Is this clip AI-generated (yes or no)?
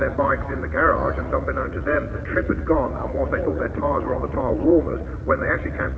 yes